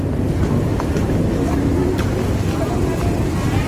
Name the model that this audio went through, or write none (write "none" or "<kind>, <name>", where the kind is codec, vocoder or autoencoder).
none